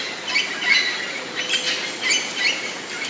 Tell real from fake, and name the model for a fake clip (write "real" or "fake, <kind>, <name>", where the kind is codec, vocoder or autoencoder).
real